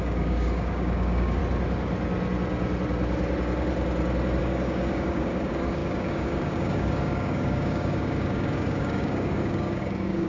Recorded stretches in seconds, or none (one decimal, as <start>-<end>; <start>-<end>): 1.4-4.4